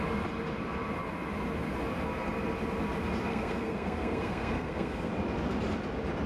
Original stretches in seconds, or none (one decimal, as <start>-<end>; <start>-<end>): 0.0-3.3; 5.1-6.3